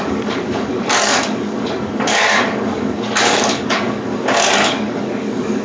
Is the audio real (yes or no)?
no